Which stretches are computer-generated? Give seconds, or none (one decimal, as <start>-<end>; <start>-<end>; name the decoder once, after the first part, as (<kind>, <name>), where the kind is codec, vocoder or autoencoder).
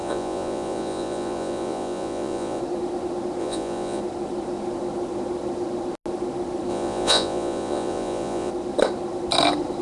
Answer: 0.0-2.6 (vocoder, Vocos); 3.4-4.0; 6.7-8.5